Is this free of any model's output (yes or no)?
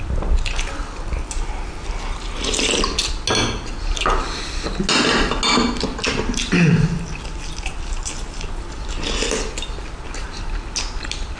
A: yes